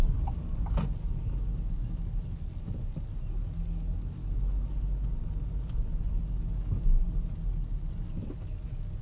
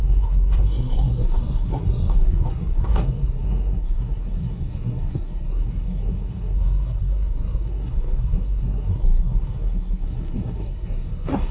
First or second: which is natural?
first